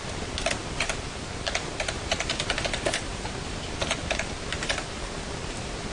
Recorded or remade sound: remade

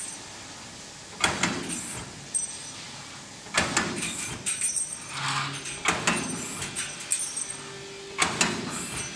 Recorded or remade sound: recorded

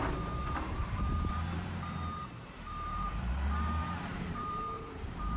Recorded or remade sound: remade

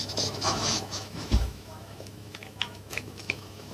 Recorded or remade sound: remade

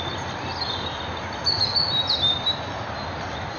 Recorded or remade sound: recorded